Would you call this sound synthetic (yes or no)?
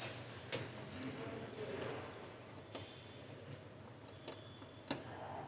no